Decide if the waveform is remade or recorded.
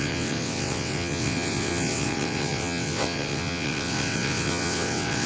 remade